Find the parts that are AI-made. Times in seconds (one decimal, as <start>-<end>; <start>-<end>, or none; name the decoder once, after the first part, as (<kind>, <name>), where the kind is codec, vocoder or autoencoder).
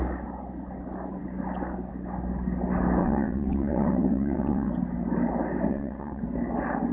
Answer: 3.0-4.7 (vocoder, WaveNeXt); 5.7-6.2